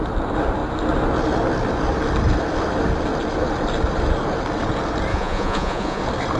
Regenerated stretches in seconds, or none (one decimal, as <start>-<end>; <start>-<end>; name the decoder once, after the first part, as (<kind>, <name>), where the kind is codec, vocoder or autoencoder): 5.1-6.0 (vocoder, Vocos)